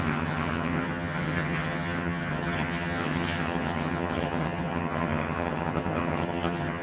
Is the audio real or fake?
fake